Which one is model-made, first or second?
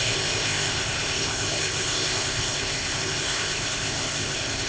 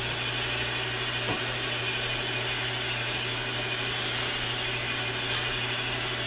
first